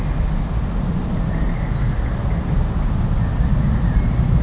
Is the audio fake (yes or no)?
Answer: no